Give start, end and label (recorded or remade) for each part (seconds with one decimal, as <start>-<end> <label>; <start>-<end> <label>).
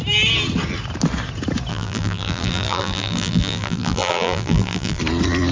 0.0-1.7 recorded; 1.7-5.0 remade; 5.0-5.5 recorded